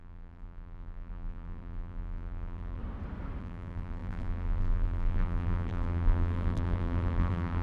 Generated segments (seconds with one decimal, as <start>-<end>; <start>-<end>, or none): 0.0-2.8; 3.4-7.6